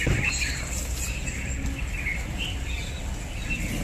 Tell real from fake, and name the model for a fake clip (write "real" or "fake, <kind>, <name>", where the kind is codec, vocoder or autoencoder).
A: real